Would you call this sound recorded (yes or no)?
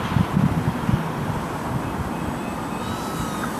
yes